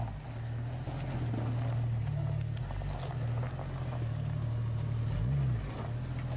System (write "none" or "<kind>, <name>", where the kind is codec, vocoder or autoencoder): none